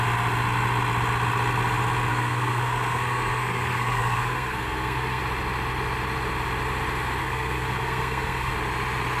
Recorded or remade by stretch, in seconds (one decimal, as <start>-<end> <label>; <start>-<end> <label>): 0.0-2.1 recorded; 2.1-5.2 remade; 5.2-7.2 recorded; 7.2-8.5 remade; 8.5-9.2 recorded